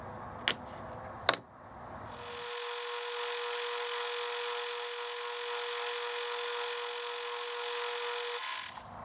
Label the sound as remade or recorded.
recorded